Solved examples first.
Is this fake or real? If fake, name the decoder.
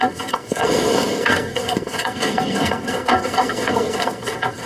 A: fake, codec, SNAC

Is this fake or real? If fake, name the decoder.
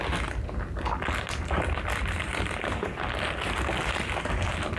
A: real